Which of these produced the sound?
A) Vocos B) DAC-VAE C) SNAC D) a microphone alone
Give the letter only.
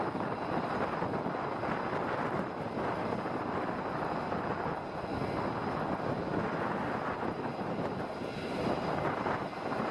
D